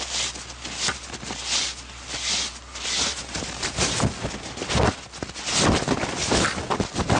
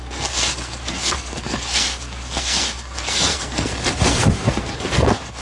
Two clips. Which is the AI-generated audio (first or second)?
second